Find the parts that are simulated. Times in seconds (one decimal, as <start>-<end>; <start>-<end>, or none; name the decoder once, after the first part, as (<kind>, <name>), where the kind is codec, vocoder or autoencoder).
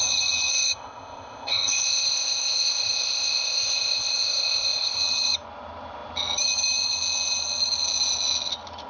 0.5-5.0 (codec, ZipCodec)